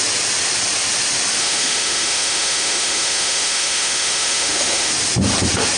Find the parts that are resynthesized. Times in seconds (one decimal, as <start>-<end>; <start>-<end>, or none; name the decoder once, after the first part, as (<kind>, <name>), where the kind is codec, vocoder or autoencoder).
1.4-4.9 (autoencoder, DAC-VAE)